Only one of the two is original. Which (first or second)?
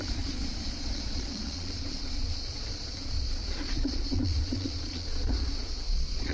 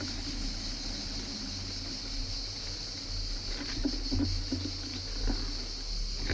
second